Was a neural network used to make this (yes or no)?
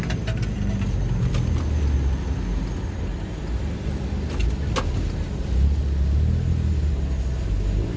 no